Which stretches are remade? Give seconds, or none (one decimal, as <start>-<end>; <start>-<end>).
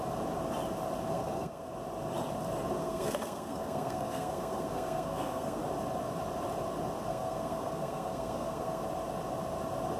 1.1-1.7; 2.8-5.6; 7.1-8.8